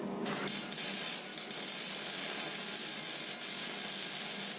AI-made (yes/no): no